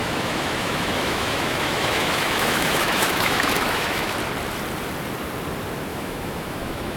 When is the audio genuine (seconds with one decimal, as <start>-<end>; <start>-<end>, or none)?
4.2-5.9